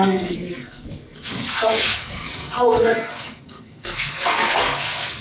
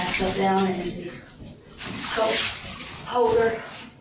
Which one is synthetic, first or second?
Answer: first